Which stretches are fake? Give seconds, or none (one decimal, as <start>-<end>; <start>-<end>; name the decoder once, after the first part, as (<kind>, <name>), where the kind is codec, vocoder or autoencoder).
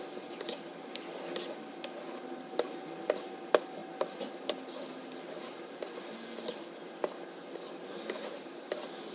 none